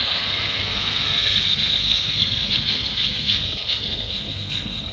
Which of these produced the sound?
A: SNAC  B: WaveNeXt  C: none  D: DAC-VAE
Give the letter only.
A